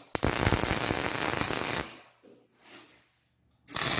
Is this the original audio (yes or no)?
yes